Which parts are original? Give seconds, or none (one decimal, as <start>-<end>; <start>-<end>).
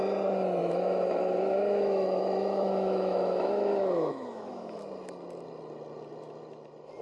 0.0-0.6; 4.8-7.0